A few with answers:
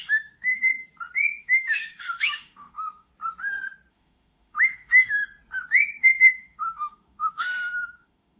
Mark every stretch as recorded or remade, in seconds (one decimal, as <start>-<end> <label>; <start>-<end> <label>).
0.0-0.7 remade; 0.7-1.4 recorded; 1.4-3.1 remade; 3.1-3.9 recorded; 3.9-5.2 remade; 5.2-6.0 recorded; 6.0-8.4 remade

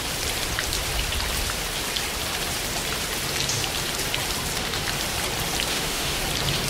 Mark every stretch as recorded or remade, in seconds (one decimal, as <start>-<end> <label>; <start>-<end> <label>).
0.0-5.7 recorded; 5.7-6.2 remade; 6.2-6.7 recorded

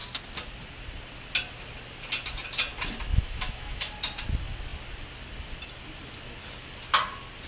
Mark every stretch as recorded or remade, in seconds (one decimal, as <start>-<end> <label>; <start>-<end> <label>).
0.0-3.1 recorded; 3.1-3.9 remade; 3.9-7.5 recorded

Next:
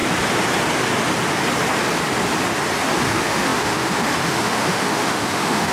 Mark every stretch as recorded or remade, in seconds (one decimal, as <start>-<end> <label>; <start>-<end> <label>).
0.0-3.1 recorded; 3.1-5.7 remade